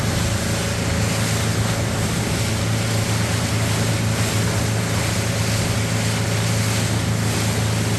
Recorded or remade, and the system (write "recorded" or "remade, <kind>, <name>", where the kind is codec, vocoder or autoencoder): recorded